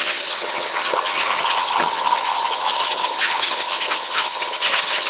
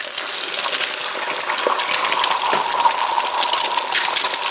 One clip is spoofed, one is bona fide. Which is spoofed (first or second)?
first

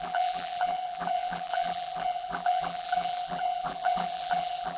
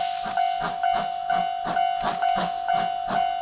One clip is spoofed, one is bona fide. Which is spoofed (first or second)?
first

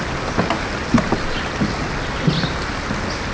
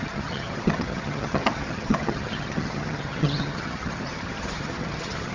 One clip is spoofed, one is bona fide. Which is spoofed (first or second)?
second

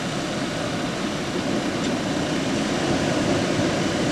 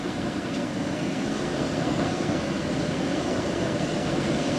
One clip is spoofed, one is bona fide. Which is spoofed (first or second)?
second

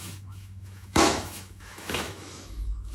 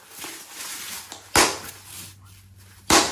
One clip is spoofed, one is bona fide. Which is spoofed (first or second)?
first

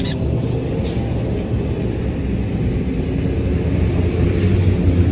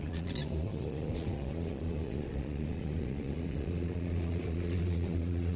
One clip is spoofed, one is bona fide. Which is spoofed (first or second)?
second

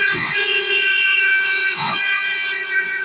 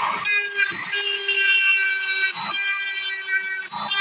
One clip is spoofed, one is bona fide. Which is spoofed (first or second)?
first